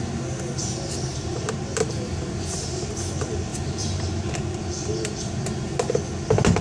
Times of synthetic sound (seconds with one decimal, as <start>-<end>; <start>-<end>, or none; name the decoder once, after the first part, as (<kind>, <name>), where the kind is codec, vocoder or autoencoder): 1.1-2.8 (vocoder, BigVGAN v2); 3.5-4.3